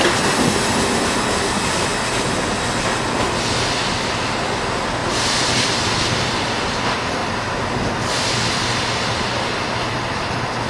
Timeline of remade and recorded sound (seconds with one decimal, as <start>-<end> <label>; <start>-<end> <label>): 0.0-5.0 recorded; 5.0-6.3 remade; 6.3-7.2 recorded; 7.2-8.1 remade; 8.1-10.7 recorded